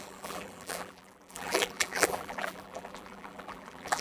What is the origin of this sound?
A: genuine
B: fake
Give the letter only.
B